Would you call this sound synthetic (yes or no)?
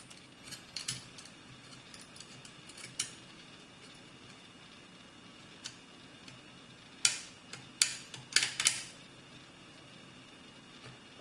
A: no